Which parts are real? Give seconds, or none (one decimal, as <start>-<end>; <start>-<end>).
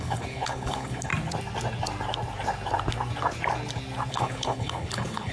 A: 1.1-4.1